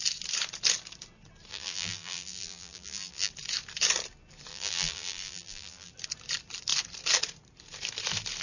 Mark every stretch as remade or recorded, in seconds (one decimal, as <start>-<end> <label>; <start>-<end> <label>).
0.0-1.5 recorded; 1.5-3.3 remade; 3.3-4.5 recorded; 4.5-5.9 remade; 5.9-8.4 recorded